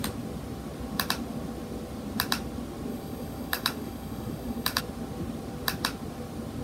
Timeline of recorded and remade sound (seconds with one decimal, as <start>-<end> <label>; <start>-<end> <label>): 0.0-2.9 recorded; 2.9-4.8 remade; 4.8-6.6 recorded